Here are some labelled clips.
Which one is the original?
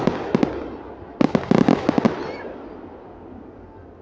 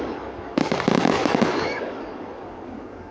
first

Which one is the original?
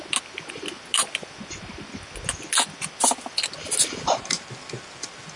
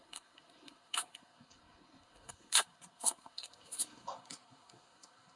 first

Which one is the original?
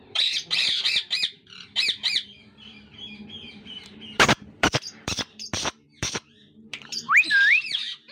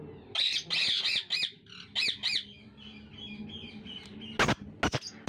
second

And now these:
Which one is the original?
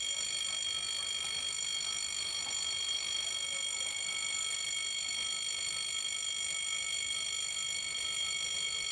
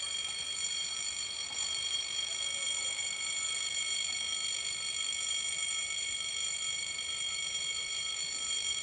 first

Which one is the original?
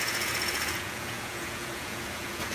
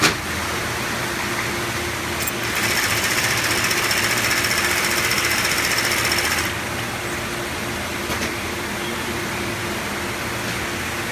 second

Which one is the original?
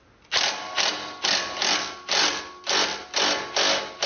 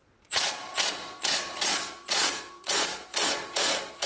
first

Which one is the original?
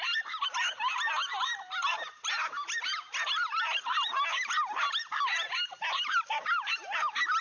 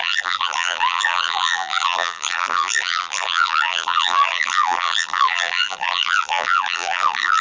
first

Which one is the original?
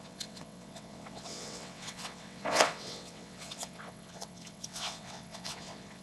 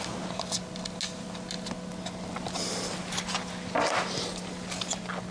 second